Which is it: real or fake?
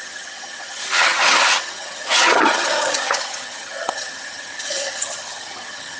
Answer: fake